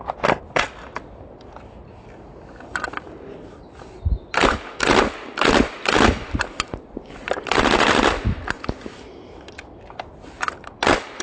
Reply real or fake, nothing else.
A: real